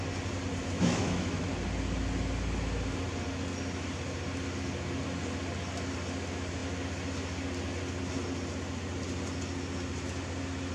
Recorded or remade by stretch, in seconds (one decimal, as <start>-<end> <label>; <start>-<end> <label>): 0.0-0.6 recorded; 0.6-1.5 remade; 1.5-10.7 recorded